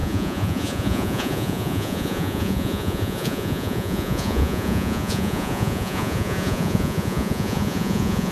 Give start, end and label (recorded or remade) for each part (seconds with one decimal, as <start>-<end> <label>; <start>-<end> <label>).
0.0-8.3 remade